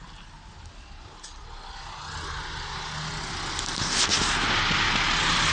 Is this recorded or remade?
recorded